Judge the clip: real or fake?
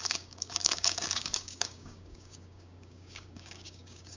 fake